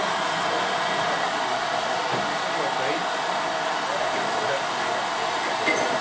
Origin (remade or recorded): recorded